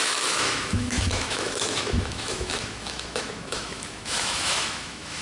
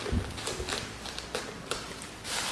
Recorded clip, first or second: second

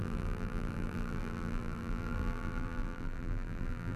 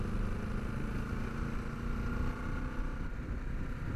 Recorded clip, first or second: second